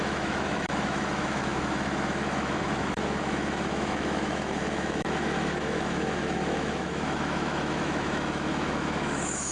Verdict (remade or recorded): remade